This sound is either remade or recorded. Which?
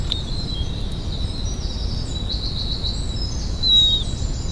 recorded